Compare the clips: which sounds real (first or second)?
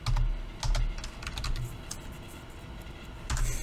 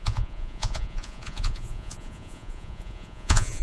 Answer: first